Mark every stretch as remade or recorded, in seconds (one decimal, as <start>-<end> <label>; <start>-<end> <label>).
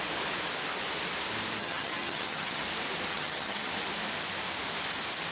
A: 0.0-1.6 recorded; 1.6-2.6 remade; 2.6-3.1 recorded; 3.1-3.7 remade; 3.7-5.3 recorded